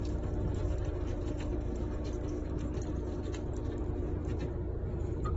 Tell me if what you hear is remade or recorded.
recorded